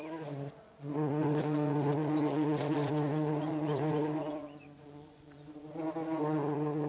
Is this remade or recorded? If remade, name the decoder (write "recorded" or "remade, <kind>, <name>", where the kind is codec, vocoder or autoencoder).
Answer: remade, vocoder, Vocos